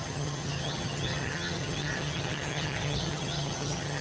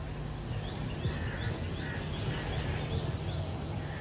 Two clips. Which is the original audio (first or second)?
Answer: second